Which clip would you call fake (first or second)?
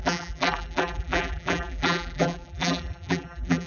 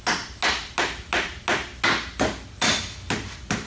first